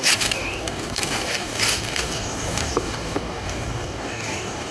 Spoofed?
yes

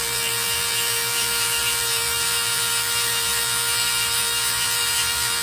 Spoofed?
yes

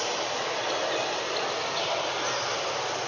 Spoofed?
no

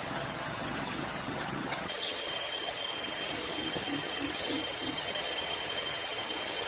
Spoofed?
yes